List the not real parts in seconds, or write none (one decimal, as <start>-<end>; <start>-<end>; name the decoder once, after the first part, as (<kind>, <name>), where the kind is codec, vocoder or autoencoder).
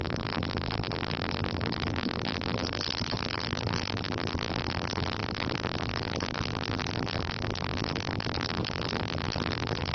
0.0-9.9 (vocoder, BigVGAN v2)